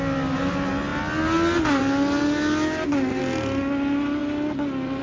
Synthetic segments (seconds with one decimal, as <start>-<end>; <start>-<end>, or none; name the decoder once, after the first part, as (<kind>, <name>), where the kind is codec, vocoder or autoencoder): none

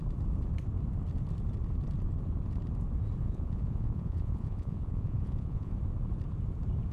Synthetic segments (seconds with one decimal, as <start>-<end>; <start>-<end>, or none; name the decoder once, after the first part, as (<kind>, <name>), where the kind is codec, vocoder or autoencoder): 3.2-5.7 (vocoder, Vocos)

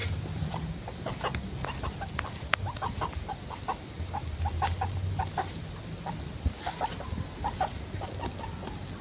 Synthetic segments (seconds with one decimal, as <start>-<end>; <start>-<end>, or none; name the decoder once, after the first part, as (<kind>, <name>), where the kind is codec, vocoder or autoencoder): 0.0-0.8 (vocoder, BigVGAN v2)

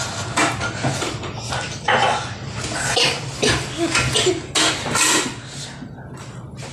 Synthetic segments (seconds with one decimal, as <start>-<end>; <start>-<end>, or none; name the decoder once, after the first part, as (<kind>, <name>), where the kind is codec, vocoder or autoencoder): none

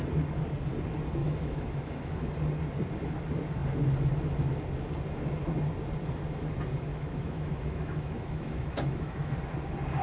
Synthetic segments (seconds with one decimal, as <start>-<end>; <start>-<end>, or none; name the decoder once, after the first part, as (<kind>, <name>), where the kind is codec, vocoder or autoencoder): 1.2-2.3 (autoencoder, DAC-VAE); 6.9-9.3

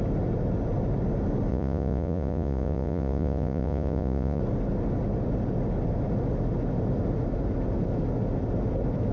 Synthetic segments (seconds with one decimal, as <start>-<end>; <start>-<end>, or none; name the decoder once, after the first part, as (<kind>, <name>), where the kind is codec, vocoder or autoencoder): 1.5-4.4 (vocoder, Vocos)